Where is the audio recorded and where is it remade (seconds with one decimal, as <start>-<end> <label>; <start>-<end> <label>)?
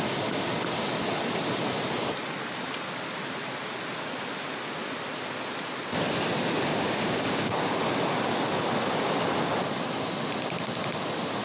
0.0-6.7 recorded; 6.7-7.6 remade; 7.6-11.4 recorded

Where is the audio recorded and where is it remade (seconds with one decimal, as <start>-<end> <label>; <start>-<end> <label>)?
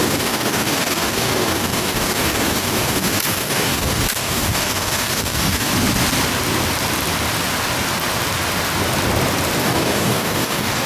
0.0-5.7 remade; 5.7-9.6 recorded; 9.6-10.9 remade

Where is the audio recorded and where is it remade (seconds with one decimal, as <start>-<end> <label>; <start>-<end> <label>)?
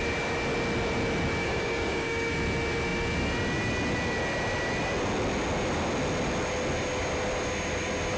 0.0-1.4 recorded; 1.4-2.3 remade; 2.3-8.2 recorded